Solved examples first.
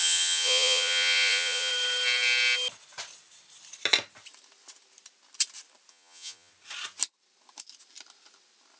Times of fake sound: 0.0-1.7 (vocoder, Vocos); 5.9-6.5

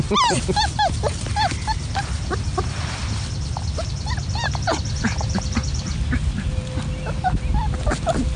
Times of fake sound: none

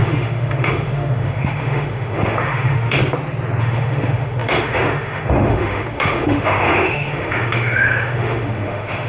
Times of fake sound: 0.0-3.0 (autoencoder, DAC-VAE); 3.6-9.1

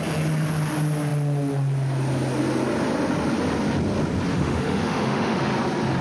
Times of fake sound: 4.3-5.4 (autoencoder, DAC-VAE)

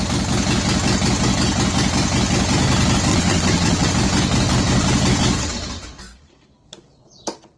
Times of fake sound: 3.1-3.9 (vocoder, WaveNeXt)